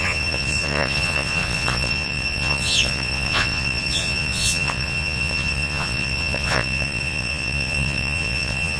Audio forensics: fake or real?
fake